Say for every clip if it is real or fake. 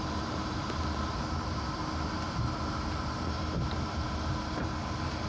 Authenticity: real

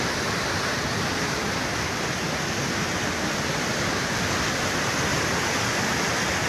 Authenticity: real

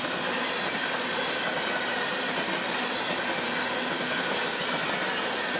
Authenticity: real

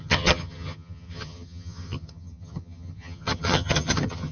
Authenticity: fake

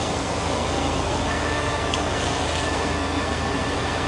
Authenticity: fake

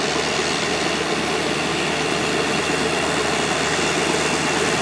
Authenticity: real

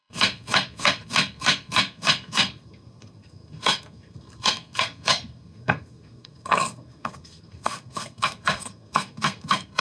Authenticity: fake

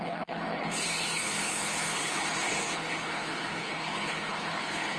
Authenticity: fake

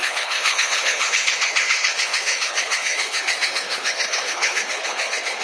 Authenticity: fake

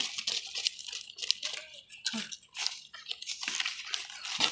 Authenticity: real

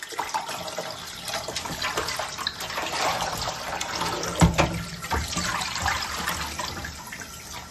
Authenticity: real